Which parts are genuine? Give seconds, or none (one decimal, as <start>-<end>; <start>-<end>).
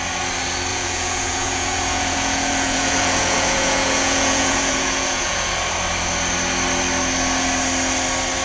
0.0-0.7; 5.5-8.4